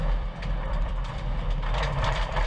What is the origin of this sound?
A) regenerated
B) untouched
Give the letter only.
A